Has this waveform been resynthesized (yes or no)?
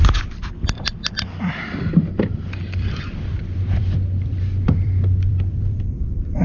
yes